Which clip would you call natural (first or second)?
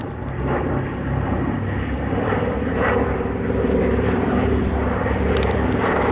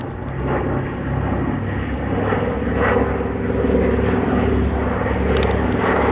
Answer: second